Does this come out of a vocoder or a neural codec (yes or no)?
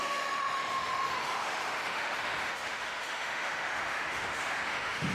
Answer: yes